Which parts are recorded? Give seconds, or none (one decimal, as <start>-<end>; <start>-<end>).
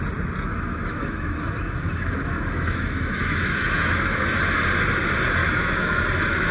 0.0-0.5; 4.4-5.4; 6.0-6.5